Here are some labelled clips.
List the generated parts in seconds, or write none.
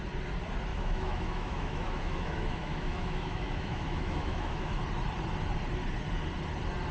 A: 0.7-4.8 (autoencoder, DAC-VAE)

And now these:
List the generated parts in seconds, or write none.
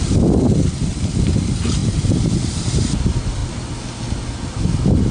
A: 1.8-2.3 (vocoder, BigVGAN v2)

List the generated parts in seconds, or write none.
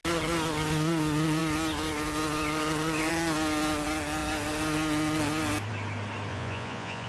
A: 6.3-7.1 (vocoder, Vocos)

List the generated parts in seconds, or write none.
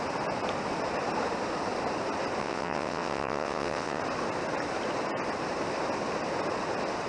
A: 2.4-4.0 (vocoder, WaveNeXt)